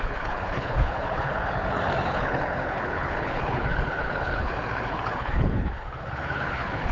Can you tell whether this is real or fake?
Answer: fake